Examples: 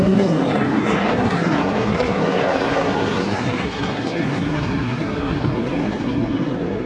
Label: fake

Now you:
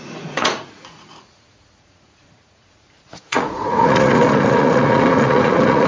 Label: fake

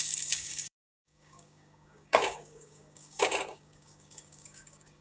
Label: fake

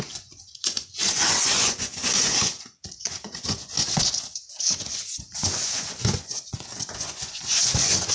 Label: fake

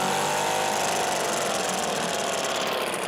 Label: real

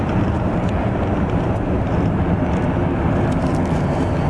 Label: real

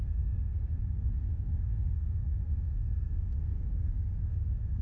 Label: fake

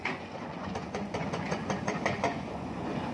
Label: fake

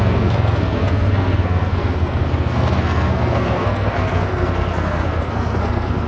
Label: fake